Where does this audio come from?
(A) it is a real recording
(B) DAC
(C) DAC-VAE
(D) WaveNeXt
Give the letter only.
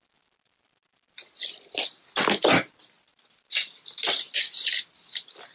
A